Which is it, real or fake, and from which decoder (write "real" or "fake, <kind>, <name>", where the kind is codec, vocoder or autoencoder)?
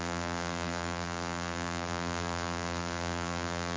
fake, vocoder, BigVGAN v2